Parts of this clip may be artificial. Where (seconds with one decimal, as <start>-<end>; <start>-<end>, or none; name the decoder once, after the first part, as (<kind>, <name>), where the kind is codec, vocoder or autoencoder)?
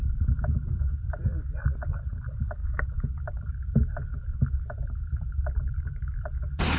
0.0-1.3 (vocoder, BigVGAN v2); 1.9-6.8